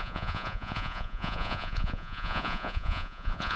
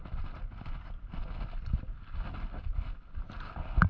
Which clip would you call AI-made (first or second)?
first